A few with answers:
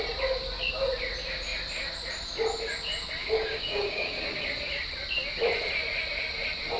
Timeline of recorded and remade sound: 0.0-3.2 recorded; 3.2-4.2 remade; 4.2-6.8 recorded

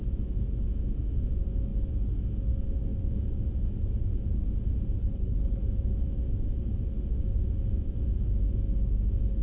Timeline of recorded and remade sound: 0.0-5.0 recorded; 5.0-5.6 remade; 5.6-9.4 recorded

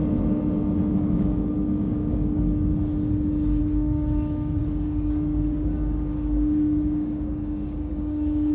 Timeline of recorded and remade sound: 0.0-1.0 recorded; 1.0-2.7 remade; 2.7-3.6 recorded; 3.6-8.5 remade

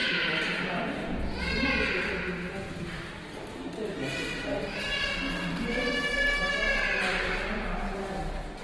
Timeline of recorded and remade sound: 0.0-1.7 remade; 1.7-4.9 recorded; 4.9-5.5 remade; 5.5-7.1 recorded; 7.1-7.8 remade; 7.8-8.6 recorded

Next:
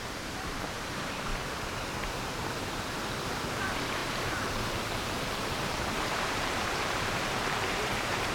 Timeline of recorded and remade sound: 0.0-1.3 remade; 1.3-3.5 recorded; 3.5-8.3 remade

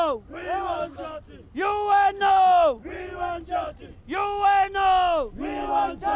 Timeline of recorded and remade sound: 0.0-0.4 recorded; 0.4-1.2 remade; 1.2-6.2 recorded

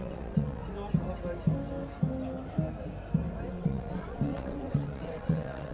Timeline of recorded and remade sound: 0.0-0.6 remade; 0.6-3.5 recorded; 3.5-5.7 remade

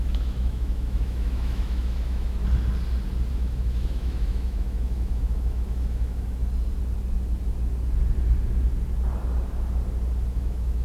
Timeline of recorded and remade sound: 0.0-2.4 remade; 2.4-3.3 recorded; 3.3-6.4 remade; 6.4-10.3 recorded; 10.3-10.8 remade